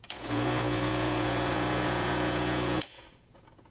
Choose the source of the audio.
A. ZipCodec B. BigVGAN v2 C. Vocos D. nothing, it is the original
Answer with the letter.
C